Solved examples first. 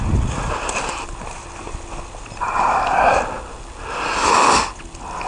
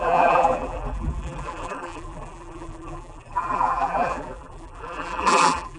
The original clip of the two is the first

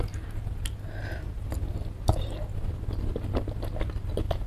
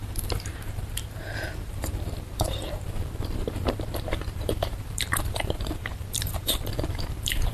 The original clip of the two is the first